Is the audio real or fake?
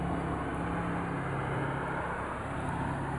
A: real